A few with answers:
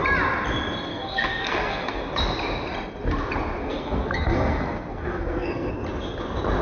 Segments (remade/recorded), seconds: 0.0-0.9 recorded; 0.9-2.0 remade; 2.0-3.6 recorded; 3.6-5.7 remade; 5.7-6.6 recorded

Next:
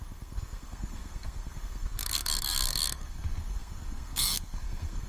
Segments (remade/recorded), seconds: 0.0-5.1 remade

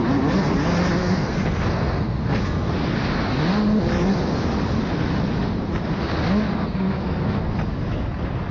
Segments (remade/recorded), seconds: 0.0-1.0 recorded; 1.0-2.7 remade; 2.7-6.6 recorded; 6.6-7.5 remade; 7.5-8.5 recorded

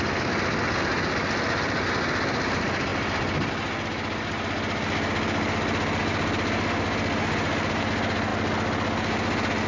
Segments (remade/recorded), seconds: 0.0-9.7 recorded

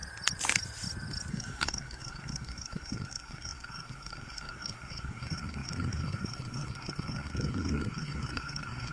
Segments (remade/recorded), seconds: 0.0-1.3 recorded; 1.3-8.9 remade

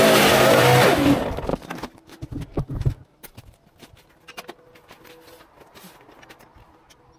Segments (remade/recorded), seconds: 0.0-7.2 recorded